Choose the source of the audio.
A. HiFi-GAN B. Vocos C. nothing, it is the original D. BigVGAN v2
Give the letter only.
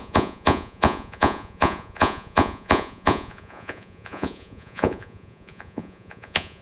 B